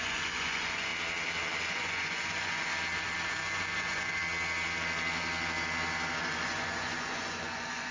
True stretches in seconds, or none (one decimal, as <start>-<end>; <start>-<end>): 0.9-1.7; 2.7-3.3; 4.2-6.2